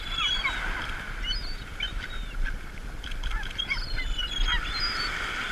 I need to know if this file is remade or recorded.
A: remade